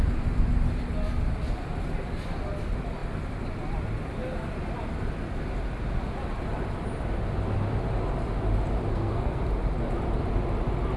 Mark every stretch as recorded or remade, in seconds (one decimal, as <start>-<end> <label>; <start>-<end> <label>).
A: 0.0-8.9 recorded; 8.9-9.4 remade; 9.4-11.0 recorded